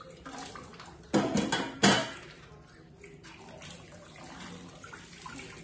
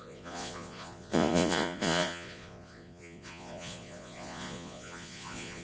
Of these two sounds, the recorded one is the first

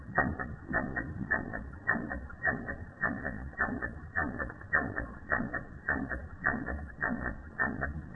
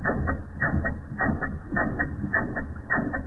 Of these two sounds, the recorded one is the second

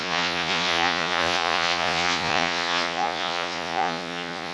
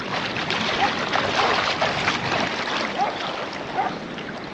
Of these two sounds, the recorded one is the second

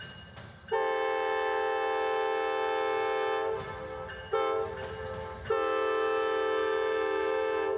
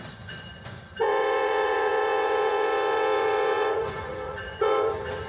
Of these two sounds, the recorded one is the first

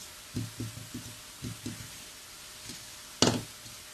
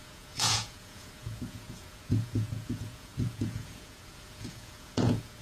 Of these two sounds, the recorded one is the first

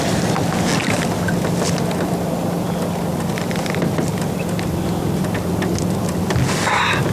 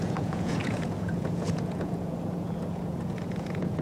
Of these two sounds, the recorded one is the first